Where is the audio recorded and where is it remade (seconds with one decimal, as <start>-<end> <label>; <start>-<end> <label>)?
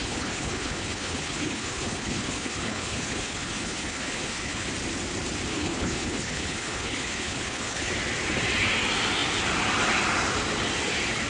0.0-4.7 remade; 4.7-5.5 recorded; 5.5-7.9 remade; 7.9-11.3 recorded